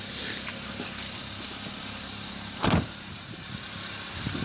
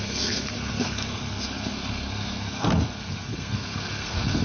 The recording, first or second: first